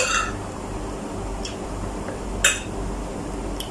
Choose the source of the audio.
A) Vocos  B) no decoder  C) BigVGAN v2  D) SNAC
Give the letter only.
B